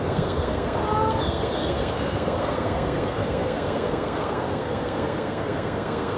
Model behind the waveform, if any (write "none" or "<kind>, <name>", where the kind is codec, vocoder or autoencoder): codec, SNAC